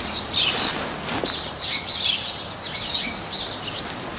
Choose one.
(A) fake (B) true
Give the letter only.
B